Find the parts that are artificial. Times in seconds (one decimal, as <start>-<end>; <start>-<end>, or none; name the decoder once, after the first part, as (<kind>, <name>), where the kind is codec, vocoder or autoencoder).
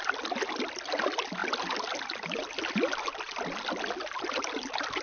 none